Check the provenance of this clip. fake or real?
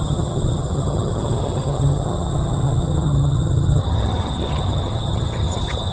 fake